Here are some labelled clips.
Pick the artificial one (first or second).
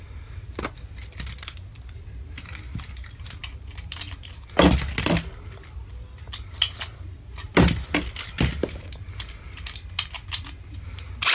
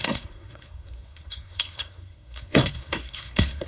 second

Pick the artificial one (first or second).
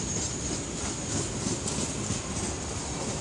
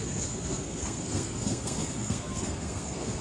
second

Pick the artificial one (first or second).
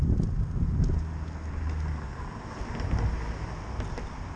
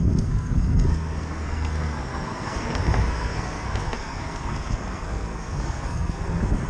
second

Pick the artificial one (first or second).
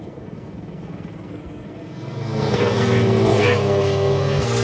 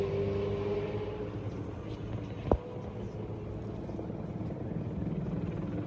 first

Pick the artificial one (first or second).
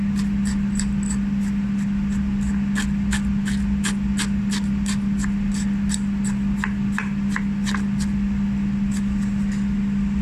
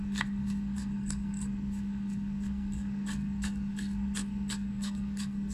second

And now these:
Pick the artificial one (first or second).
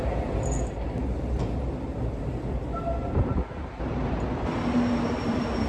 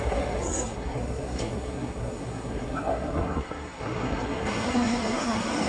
second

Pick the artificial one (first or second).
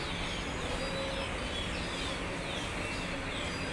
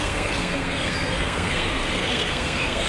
second